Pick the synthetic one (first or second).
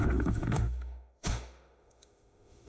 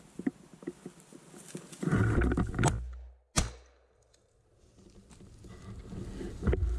first